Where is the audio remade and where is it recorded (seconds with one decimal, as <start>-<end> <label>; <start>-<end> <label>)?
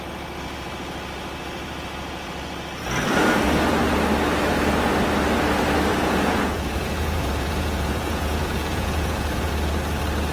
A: 0.0-5.9 recorded; 5.9-9.5 remade; 9.5-10.3 recorded